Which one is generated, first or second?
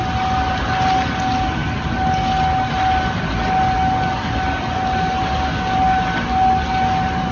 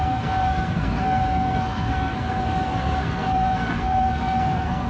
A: second